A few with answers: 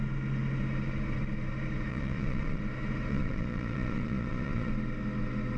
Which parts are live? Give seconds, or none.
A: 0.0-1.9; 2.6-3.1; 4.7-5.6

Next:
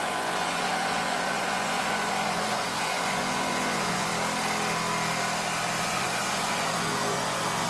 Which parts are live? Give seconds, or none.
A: 4.1-5.8

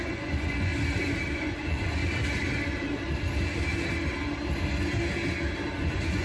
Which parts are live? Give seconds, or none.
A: 0.7-1.4; 2.0-5.7

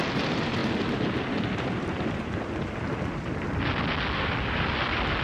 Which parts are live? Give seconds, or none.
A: 0.0-5.2

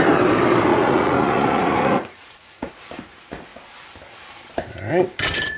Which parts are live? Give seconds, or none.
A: 0.0-0.7; 2.7-5.6

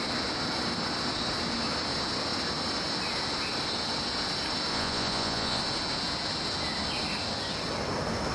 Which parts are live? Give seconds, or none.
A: 0.0-4.7; 5.6-8.3

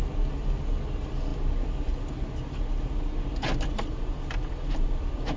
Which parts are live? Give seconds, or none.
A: 0.0-5.4